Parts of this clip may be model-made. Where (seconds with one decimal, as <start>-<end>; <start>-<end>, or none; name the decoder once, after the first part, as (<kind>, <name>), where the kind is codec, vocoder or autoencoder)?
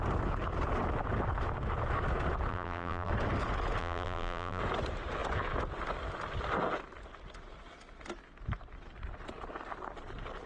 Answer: 2.5-3.1 (vocoder, BigVGAN v2); 3.8-4.6